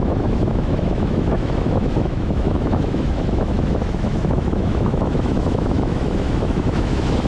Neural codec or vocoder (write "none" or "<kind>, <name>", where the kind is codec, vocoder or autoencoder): autoencoder, DAC-VAE